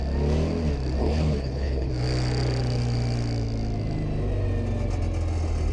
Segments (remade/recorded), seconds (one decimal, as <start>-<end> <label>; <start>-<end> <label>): 0.0-1.0 recorded; 1.0-1.9 remade; 1.9-5.7 recorded